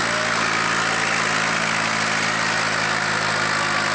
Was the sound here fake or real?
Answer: real